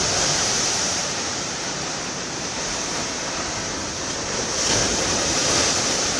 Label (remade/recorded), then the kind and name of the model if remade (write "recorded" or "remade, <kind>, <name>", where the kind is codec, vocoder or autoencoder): remade, vocoder, BigVGAN v2